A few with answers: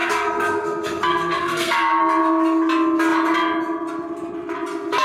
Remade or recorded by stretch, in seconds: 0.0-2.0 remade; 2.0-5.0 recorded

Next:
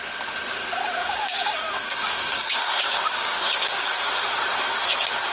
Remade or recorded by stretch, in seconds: 0.0-1.0 recorded; 1.0-4.2 remade; 4.2-5.3 recorded

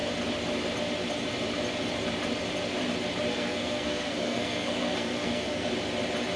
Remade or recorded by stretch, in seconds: 0.0-3.3 recorded; 3.3-5.7 remade; 5.7-6.4 recorded

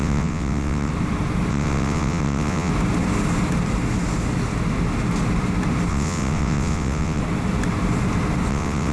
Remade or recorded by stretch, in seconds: 0.0-0.9 remade; 0.9-1.5 recorded; 1.5-2.7 remade; 2.7-5.9 recorded; 5.9-7.2 remade; 7.2-8.5 recorded; 8.5-8.9 remade

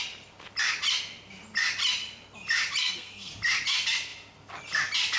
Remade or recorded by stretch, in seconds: 0.0-2.8 recorded; 2.8-3.3 remade; 3.3-5.2 recorded

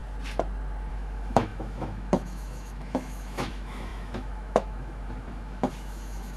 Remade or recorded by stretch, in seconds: 0.0-0.9 recorded; 0.9-6.4 remade